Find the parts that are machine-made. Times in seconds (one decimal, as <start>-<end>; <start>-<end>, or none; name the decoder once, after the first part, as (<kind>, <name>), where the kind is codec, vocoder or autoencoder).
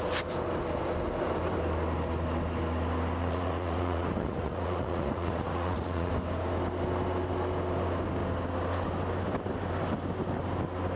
3.2-6.1 (vocoder, Vocos)